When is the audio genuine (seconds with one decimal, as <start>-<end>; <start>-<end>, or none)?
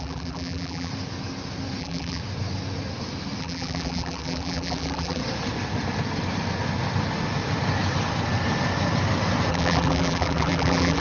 0.9-1.8; 2.2-3.4; 5.2-9.5